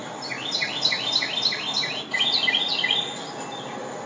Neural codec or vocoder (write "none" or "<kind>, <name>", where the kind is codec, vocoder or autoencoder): vocoder, BigVGAN v2